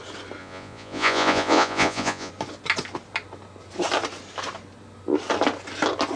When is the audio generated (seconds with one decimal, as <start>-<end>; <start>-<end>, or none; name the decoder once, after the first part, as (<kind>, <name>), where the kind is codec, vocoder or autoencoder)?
0.4-2.3 (vocoder, Vocos)